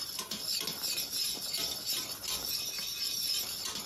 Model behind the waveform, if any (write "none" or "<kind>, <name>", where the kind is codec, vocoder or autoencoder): vocoder, BigVGAN v2